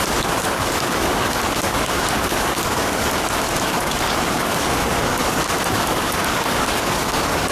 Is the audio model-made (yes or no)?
yes